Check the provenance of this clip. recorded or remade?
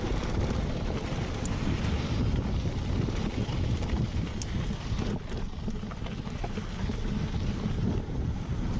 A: recorded